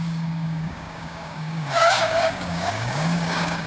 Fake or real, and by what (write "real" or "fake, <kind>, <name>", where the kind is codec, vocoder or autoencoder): fake, codec, DAC